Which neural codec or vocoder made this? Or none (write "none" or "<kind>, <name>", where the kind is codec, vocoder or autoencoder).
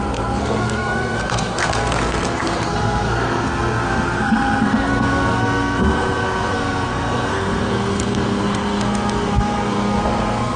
codec, SNAC